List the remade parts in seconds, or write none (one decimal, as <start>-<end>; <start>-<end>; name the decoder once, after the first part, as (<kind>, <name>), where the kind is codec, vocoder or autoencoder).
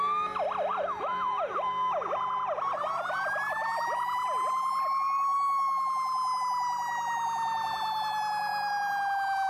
0.7-1.7 (vocoder, BigVGAN v2)